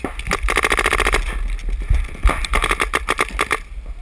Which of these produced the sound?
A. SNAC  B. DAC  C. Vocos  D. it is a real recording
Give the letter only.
D